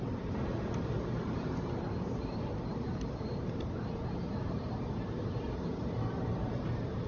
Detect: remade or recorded remade